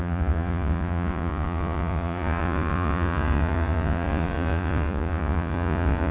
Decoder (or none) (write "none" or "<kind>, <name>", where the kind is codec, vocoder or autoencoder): vocoder, Vocos